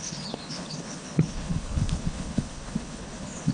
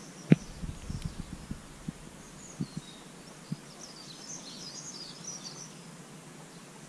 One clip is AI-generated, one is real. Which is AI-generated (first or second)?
first